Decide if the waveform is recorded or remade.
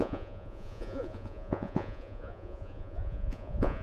remade